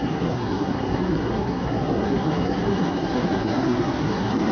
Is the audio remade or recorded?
remade